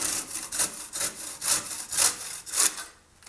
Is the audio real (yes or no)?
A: yes